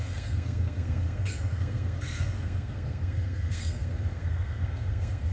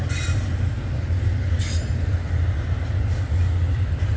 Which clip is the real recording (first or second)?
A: second